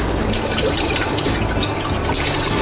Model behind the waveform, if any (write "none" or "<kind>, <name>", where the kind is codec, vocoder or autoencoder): none